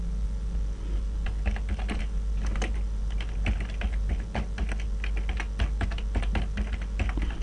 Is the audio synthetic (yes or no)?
no